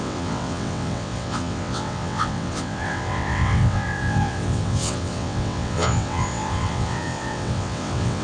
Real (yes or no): no